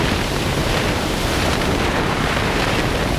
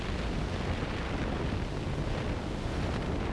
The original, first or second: second